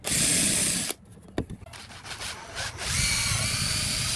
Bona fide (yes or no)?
yes